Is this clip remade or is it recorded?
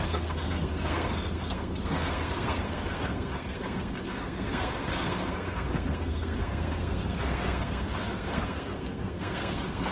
remade